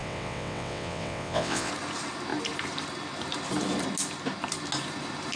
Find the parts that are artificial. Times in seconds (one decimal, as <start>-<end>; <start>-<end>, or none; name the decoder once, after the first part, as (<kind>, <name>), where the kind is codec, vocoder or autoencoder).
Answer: 0.0-1.7 (vocoder, WaveNeXt)